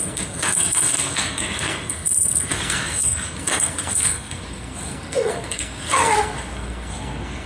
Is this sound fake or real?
fake